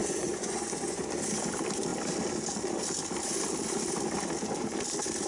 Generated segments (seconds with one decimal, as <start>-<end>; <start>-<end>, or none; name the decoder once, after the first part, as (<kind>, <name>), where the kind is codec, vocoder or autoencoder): 0.0-1.0 (vocoder, Vocos)